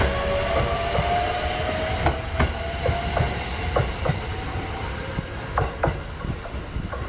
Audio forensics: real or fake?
real